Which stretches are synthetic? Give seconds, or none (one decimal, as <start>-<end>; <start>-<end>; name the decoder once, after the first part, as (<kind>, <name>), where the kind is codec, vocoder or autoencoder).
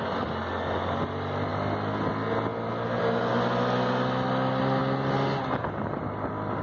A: none